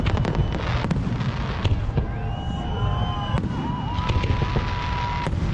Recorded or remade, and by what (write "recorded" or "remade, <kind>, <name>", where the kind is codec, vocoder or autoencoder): recorded